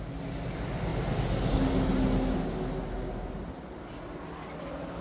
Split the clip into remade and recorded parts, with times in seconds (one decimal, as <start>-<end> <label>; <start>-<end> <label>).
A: 0.0-5.0 recorded

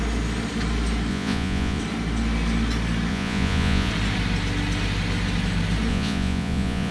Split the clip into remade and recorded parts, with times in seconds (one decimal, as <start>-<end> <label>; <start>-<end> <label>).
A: 0.0-1.1 recorded; 1.1-1.8 remade; 1.8-3.1 recorded; 3.1-3.9 remade; 3.9-5.9 recorded; 5.9-6.9 remade